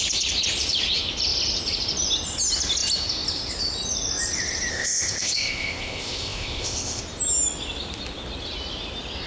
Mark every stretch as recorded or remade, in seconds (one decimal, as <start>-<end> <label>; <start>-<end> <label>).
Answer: 0.0-4.7 recorded; 4.7-7.0 remade; 7.0-9.3 recorded